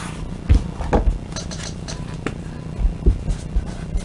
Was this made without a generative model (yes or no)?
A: yes